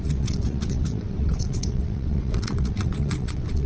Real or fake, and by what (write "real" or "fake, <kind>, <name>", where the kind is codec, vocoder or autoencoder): fake, vocoder, WaveNeXt